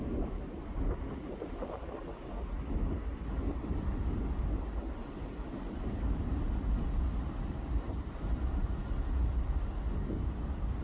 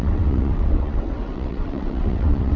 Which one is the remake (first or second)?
second